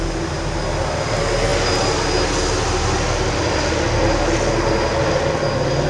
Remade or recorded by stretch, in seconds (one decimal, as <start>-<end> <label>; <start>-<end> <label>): 0.0-5.9 recorded